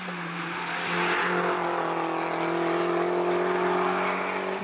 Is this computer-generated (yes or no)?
no